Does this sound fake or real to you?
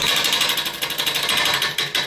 real